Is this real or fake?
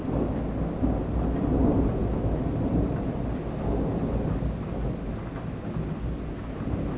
real